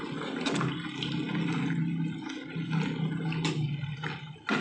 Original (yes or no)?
yes